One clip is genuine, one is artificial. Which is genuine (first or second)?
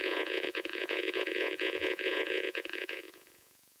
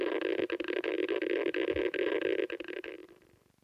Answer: second